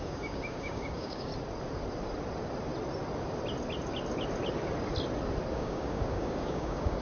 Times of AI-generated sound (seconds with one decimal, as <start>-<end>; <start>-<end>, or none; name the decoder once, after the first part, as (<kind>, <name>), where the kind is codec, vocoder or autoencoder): 0.0-1.3 (codec, DAC); 5.5-7.0